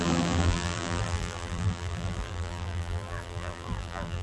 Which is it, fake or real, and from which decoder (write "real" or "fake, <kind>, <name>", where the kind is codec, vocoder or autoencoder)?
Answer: fake, vocoder, BigVGAN v2